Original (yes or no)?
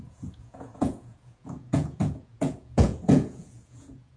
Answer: no